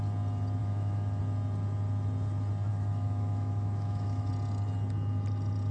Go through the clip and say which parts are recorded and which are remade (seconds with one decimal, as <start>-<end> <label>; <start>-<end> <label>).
0.0-0.6 recorded; 0.6-1.2 remade; 1.2-2.7 recorded; 2.7-4.3 remade; 4.3-5.7 recorded